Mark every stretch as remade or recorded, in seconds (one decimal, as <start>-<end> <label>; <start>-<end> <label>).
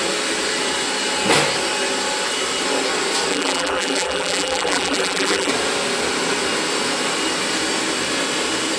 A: 0.0-3.3 recorded; 3.3-5.5 remade; 5.5-8.8 recorded